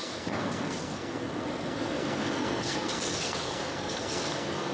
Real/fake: fake